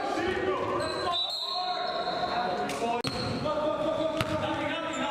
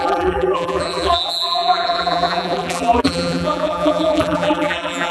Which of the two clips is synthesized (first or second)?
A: second